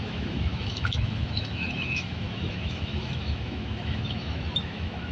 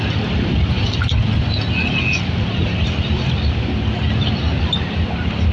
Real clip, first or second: second